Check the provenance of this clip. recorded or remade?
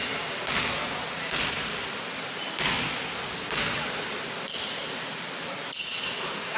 recorded